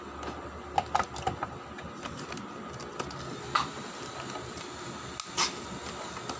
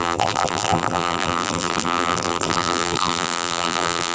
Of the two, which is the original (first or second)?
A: first